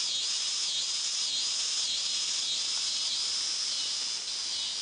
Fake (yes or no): no